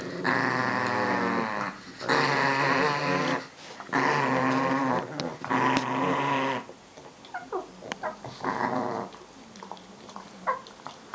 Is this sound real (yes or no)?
yes